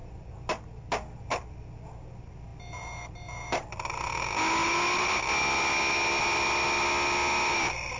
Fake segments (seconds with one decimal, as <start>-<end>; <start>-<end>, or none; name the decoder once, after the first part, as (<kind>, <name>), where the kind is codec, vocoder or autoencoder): none